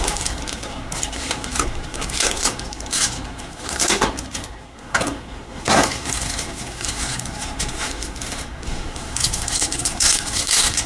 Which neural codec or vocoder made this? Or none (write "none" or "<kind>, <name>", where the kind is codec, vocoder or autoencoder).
codec, SNAC